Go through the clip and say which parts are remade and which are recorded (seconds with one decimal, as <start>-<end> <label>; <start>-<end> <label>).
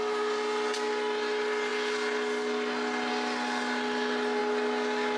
0.0-5.2 recorded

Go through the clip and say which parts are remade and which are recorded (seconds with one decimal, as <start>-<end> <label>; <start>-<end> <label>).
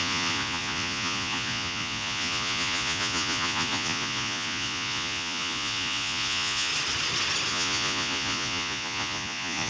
0.0-6.7 remade; 6.7-7.5 recorded; 7.5-9.7 remade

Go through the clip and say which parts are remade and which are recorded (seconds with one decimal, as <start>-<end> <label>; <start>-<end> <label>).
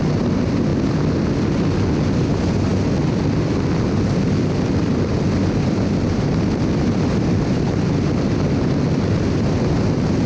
0.0-0.7 remade; 0.7-2.2 recorded; 2.2-10.3 remade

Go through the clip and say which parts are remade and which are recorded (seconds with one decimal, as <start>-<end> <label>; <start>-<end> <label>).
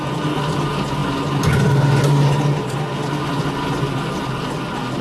0.0-5.0 recorded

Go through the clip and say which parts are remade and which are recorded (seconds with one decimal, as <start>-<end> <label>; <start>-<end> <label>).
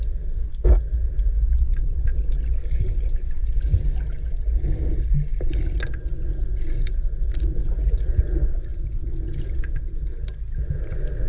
0.0-7.6 recorded; 7.6-8.2 remade; 8.2-11.3 recorded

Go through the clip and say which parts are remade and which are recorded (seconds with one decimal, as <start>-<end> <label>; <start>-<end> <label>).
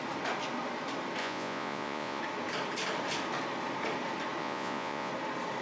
0.0-1.2 recorded; 1.2-2.2 remade; 2.2-4.4 recorded; 4.4-5.1 remade; 5.1-5.6 recorded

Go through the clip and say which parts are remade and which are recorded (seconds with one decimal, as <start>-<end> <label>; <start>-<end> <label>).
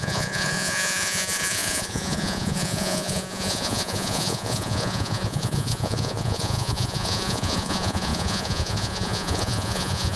0.0-10.2 remade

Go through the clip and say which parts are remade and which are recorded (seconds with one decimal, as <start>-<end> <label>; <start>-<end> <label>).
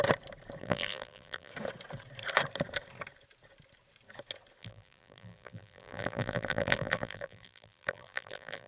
0.0-0.6 recorded; 0.6-1.5 remade; 1.5-4.6 recorded; 4.6-8.7 remade